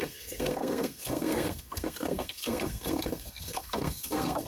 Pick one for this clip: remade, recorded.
remade